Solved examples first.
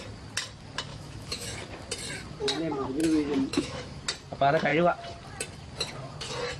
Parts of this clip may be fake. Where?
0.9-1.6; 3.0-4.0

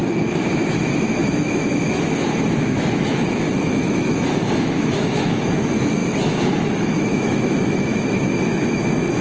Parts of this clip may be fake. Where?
0.5-9.2